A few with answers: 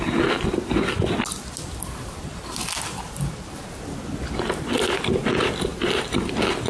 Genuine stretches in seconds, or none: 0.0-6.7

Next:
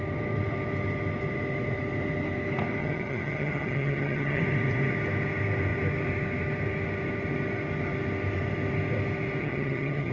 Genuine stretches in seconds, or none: 0.0-2.8; 4.4-9.4

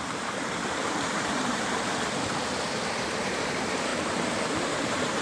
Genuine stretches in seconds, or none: 1.9-3.3

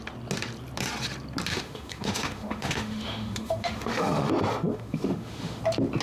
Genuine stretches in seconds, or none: 0.0-1.5; 4.3-4.7; 5.6-6.0

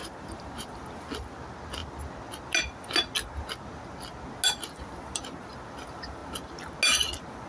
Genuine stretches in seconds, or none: 0.7-7.5

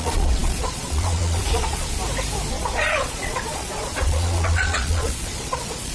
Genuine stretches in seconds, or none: 2.0-2.5